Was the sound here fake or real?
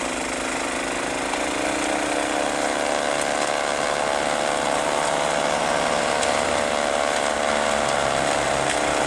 real